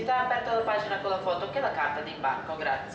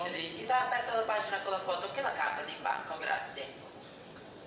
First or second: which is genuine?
first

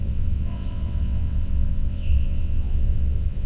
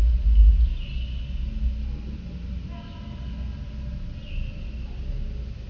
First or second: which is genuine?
second